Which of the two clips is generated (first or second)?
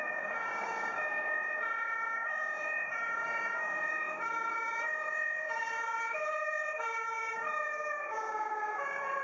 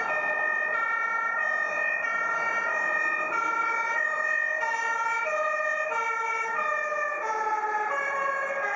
first